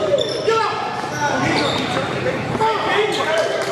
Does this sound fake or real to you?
fake